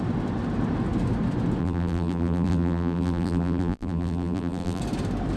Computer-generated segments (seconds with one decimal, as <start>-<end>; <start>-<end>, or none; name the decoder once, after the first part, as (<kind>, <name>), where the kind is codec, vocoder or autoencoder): 1.6-4.8 (vocoder, BigVGAN v2)